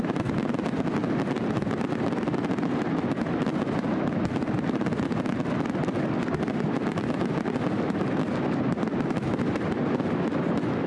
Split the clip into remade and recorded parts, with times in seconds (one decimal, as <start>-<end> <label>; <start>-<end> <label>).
0.0-10.9 recorded